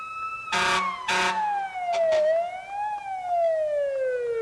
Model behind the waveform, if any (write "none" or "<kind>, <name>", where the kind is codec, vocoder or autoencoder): none